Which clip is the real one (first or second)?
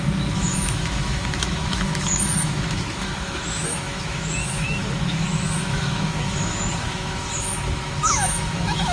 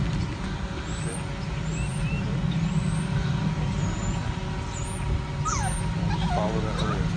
second